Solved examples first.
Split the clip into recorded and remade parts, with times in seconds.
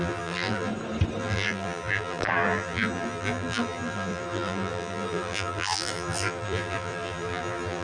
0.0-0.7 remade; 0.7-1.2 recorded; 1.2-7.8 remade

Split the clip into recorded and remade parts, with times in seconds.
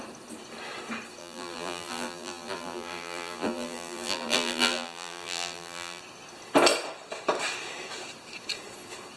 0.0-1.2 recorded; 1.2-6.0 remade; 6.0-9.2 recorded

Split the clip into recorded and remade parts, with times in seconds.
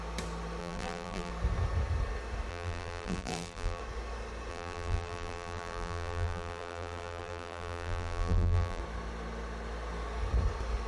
0.0-0.6 recorded; 0.6-1.3 remade; 1.3-2.5 recorded; 2.5-3.8 remade; 3.8-4.5 recorded; 4.5-8.8 remade; 8.8-10.9 recorded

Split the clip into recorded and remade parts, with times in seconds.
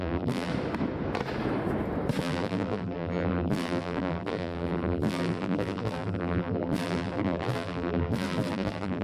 0.0-0.5 remade; 0.5-2.2 recorded; 2.2-9.0 remade